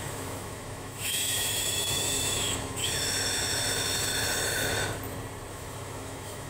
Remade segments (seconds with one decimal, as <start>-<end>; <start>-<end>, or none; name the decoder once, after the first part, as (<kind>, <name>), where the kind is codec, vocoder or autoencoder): 0.0-2.8 (autoencoder, DAC-VAE); 5.5-6.5

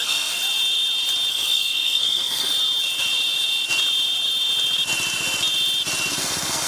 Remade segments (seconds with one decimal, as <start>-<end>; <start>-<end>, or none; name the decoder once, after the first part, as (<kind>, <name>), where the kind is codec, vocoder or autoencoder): 0.0-0.4 (codec, SNAC); 1.3-2.5; 6.1-6.7

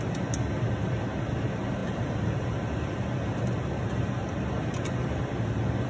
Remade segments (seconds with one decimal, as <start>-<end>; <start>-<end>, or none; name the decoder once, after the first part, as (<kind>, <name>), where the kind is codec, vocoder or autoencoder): none

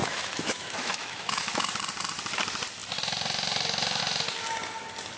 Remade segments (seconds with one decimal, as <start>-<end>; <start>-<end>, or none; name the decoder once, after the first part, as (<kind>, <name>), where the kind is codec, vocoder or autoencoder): 0.0-1.7 (autoencoder, DAC-VAE)

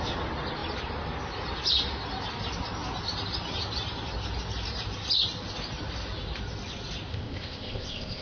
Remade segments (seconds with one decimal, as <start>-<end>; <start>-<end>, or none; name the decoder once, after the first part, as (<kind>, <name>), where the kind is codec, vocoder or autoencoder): 7.1-8.2 (codec, ZipCodec)